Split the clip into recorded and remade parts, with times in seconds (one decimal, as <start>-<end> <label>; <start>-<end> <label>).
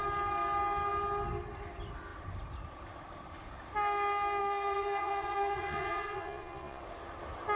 0.0-4.4 recorded; 4.4-6.8 remade; 6.8-7.6 recorded